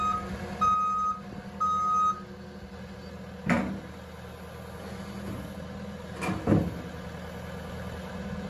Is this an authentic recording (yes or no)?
yes